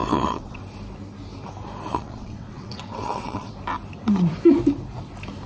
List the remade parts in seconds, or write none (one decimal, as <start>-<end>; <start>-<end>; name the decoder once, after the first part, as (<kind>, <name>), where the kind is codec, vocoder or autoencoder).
0.0-0.6 (vocoder, WaveNeXt); 1.9-3.5